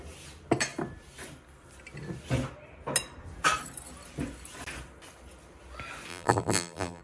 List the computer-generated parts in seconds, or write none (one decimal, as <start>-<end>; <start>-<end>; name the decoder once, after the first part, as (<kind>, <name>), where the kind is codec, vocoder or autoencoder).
6.1-7.0 (vocoder, BigVGAN v2)